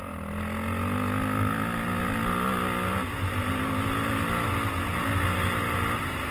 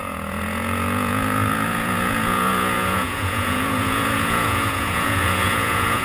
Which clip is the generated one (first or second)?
second